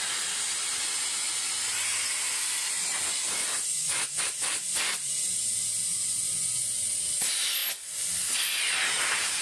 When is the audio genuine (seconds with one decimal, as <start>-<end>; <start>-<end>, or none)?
0.0-5.9; 6.9-9.4